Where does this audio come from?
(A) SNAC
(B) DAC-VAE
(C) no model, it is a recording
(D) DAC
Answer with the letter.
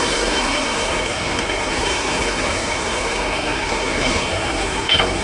A